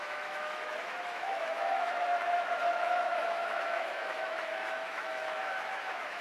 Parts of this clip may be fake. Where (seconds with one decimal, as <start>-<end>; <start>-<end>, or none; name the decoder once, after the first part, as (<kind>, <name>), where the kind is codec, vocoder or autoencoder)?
0.0-6.2 (autoencoder, DAC-VAE)